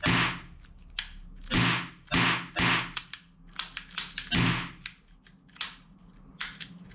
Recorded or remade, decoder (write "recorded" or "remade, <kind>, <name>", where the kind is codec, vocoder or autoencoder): recorded